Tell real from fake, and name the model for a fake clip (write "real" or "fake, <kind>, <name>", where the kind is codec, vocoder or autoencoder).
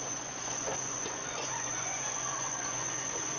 fake, vocoder, Vocos